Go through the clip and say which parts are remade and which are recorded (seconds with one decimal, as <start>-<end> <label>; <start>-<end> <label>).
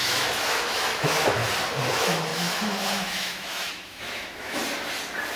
0.0-1.4 remade; 1.4-1.9 recorded; 1.9-4.6 remade; 4.6-5.4 recorded